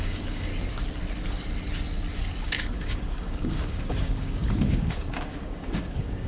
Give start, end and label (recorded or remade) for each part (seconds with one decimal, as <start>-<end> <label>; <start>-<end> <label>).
0.0-0.5 remade; 0.5-2.4 recorded; 2.4-6.3 remade